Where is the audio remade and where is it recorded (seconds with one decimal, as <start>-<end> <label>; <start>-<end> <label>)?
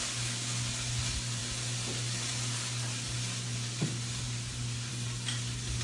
0.0-5.8 recorded